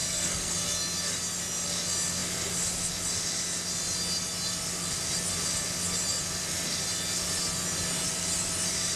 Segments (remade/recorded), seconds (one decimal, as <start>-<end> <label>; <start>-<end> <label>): 0.0-0.6 remade; 0.6-9.0 recorded